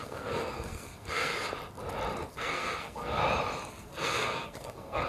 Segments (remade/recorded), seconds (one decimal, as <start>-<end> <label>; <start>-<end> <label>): 0.0-1.3 remade; 1.3-2.3 recorded; 2.3-3.2 remade; 3.2-3.7 recorded; 3.7-5.1 remade